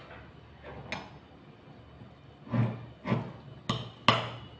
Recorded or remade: recorded